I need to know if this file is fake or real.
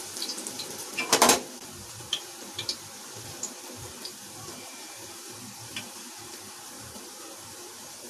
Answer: fake